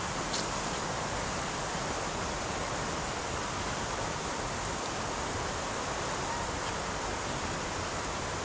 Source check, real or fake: real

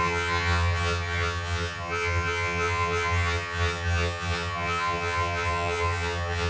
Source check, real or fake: fake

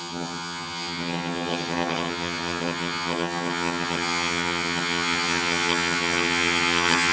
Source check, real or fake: fake